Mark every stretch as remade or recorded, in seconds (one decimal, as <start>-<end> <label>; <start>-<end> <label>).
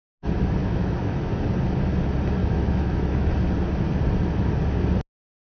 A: 0.0-0.6 recorded; 0.6-1.2 remade; 1.2-2.4 recorded; 2.4-3.3 remade; 3.3-5.5 recorded